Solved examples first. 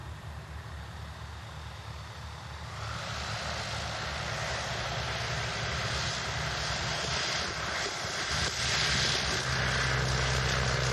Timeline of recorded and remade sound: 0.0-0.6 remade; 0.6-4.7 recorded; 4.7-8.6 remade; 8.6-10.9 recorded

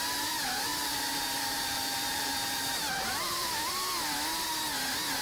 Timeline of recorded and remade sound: 0.0-0.7 recorded; 0.7-3.7 remade; 3.7-5.2 recorded

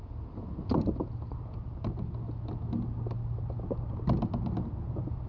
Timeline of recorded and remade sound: 0.0-5.3 recorded

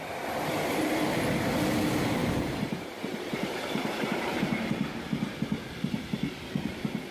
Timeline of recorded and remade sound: 0.0-2.2 recorded; 2.2-4.1 remade; 4.1-7.1 recorded

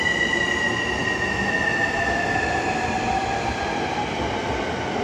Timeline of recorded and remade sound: 0.0-5.0 recorded

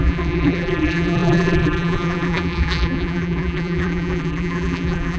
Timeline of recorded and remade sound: 0.0-5.2 remade

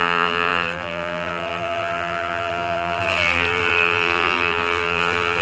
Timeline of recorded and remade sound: 0.0-5.4 remade

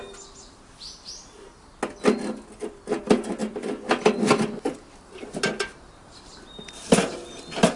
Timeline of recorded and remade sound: 0.0-3.4 recorded; 3.4-5.1 remade; 5.1-7.8 recorded